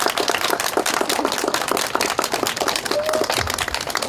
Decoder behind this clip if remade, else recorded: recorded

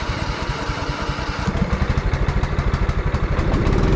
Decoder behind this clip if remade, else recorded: remade, vocoder, BigVGAN v2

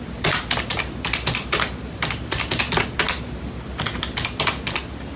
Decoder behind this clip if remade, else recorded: recorded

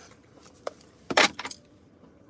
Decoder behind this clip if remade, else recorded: remade, vocoder, BigVGAN v2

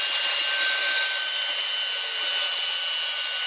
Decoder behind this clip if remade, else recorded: recorded